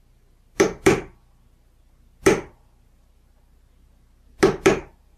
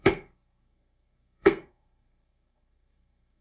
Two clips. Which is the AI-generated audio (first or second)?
second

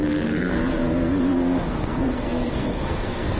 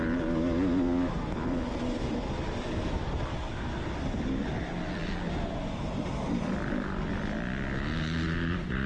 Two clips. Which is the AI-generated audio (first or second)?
first